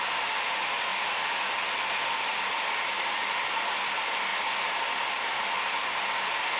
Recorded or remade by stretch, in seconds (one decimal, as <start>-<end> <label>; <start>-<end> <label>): 0.0-6.6 recorded